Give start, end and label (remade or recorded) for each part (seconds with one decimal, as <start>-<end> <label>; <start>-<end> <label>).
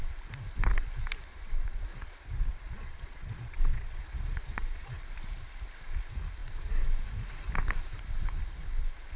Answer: 0.0-1.9 recorded; 1.9-5.0 remade; 5.0-9.2 recorded